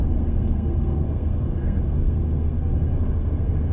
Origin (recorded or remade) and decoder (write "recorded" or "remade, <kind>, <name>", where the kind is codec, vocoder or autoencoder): remade, codec, SNAC